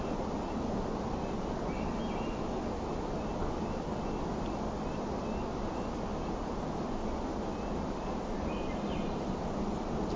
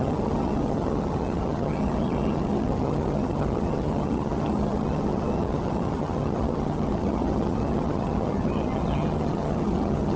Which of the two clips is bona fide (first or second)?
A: first